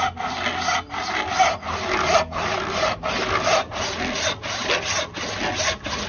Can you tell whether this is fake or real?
real